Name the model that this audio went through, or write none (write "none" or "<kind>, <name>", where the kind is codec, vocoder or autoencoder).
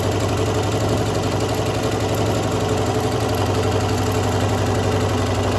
none